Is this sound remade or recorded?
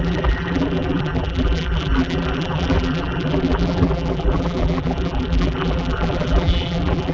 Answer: remade